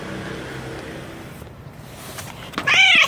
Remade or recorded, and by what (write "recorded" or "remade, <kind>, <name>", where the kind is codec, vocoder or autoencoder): remade, vocoder, BigVGAN v2